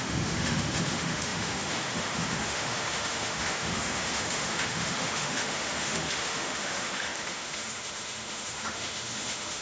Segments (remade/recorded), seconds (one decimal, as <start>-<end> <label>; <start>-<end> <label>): 0.0-9.6 remade